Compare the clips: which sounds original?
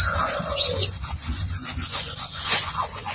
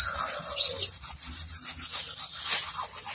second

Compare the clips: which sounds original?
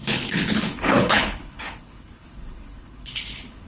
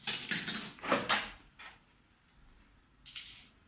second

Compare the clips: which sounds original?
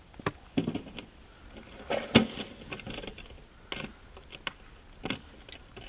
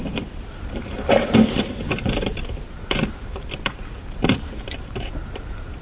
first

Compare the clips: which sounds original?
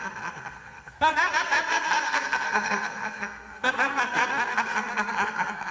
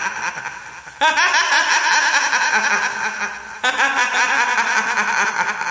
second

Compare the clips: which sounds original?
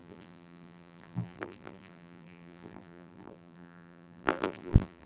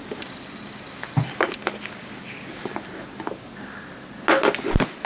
second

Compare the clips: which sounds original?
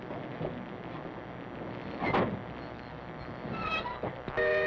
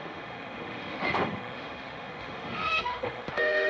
first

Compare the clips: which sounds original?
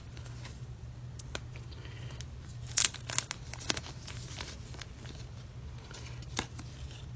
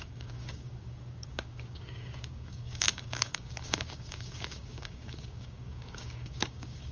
first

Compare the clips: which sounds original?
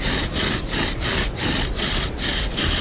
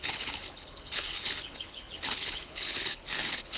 first